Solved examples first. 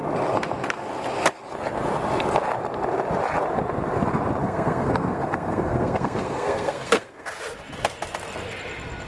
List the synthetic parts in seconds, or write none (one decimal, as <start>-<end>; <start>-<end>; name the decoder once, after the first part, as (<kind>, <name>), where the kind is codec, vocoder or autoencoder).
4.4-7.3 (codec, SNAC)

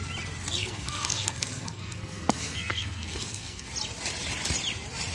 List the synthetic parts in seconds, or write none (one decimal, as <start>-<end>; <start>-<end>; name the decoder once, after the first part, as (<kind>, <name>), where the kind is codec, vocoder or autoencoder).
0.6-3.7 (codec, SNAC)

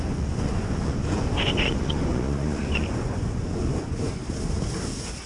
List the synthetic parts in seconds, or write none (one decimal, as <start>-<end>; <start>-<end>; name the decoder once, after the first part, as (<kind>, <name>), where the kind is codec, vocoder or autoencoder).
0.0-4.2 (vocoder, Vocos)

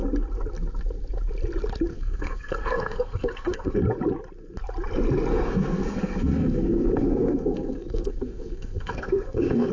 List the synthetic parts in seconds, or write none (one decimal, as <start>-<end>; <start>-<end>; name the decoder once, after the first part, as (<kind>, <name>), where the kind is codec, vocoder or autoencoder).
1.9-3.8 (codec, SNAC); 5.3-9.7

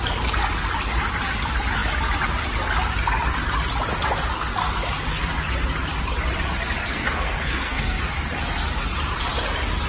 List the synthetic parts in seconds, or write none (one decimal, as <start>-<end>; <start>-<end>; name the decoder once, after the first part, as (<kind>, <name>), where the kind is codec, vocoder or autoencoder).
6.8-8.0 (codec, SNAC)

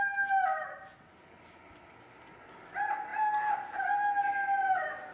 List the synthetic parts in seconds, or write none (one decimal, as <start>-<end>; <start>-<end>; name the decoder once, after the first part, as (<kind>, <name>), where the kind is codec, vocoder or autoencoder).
0.5-1.2 (vocoder, BigVGAN v2)